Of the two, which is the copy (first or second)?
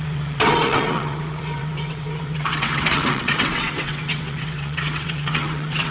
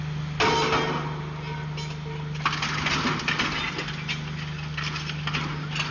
first